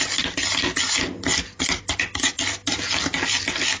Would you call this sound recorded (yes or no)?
yes